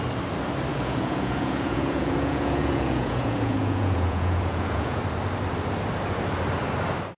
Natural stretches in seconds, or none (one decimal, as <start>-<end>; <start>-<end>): 0.0-0.7; 5.0-7.2